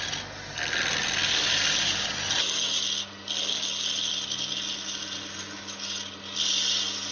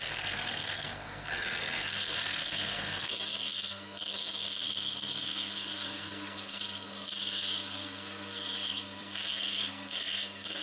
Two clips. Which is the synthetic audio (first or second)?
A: second